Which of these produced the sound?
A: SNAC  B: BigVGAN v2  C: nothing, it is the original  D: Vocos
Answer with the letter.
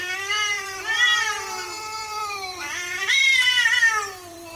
B